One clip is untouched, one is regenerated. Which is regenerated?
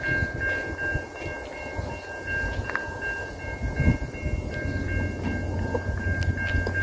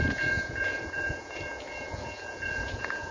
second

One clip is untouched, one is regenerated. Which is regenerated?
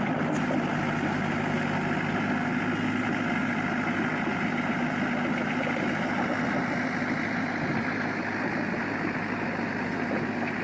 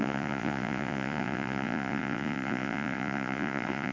second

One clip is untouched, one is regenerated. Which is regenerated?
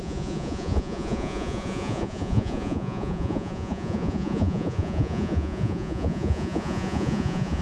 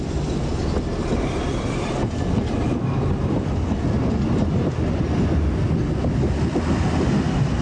first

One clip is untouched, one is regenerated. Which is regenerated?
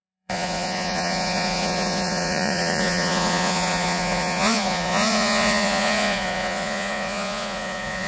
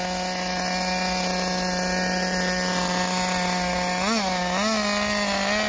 first